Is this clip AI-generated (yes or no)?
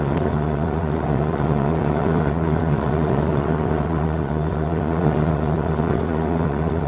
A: yes